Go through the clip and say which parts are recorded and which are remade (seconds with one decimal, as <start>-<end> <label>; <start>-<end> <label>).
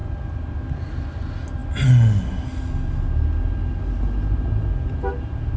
0.0-5.6 recorded